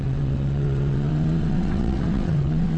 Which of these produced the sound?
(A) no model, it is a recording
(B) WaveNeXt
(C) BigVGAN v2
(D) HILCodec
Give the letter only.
B